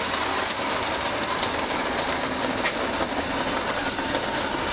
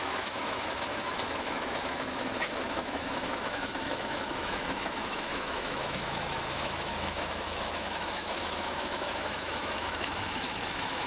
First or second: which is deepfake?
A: second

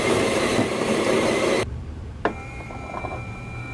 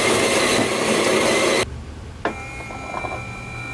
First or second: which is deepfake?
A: first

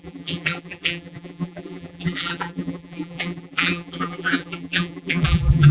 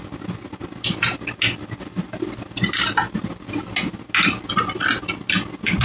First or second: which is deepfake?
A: first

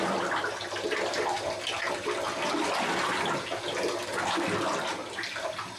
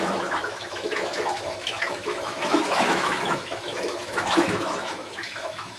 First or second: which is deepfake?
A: second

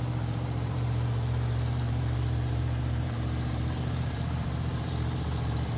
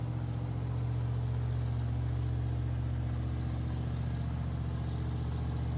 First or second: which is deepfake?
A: first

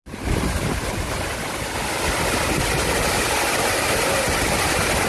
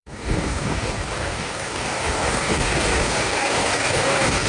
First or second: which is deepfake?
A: second